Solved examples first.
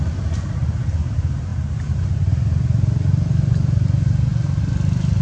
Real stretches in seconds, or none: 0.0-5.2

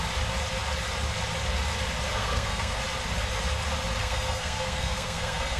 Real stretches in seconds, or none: 0.0-2.2; 2.7-4.0

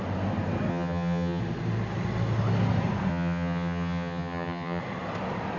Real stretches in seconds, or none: 0.0-0.7; 1.4-3.1; 4.8-5.6

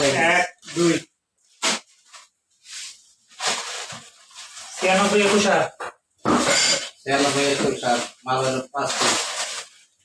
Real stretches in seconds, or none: 0.0-10.0

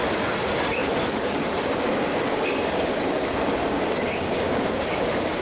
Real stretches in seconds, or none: 0.0-2.1

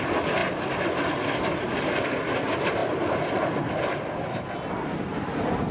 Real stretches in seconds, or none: 0.0-5.7

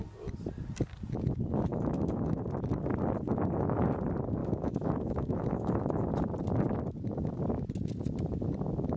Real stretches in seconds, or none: 0.0-1.7; 2.4-4.4; 6.1-9.0

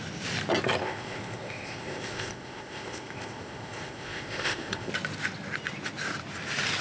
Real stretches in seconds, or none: 0.0-0.8; 4.9-6.8